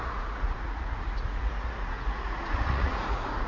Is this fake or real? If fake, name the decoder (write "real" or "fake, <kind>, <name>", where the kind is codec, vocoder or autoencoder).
fake, vocoder, Vocos